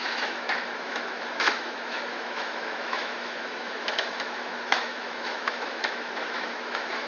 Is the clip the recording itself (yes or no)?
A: no